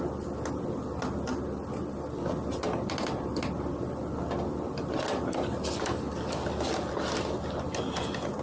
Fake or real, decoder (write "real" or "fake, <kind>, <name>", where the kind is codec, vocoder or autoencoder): real